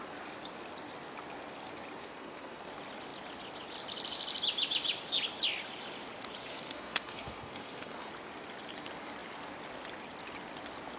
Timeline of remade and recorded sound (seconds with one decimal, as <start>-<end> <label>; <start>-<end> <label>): 0.0-2.0 recorded; 2.0-2.7 remade; 2.7-6.5 recorded; 6.5-8.1 remade; 8.1-11.0 recorded